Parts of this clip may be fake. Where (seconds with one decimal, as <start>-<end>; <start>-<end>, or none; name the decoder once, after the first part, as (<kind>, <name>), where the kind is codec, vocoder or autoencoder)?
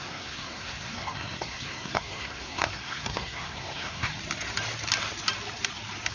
0.0-4.1 (codec, SNAC)